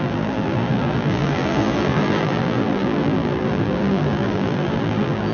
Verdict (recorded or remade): remade